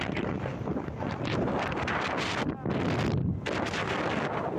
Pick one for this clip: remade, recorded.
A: remade